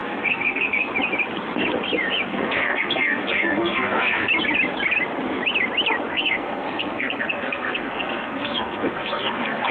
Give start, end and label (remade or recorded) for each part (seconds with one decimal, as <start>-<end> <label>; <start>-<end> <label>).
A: 0.0-0.9 remade; 0.9-2.3 recorded; 2.3-4.3 remade; 4.3-6.1 recorded; 6.1-9.7 remade